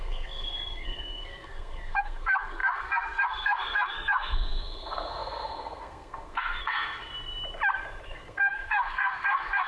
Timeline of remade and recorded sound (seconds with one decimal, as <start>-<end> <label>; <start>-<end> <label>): 0.0-7.1 remade; 7.1-8.0 recorded; 8.0-9.7 remade